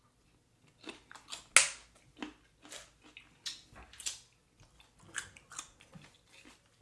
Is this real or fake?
real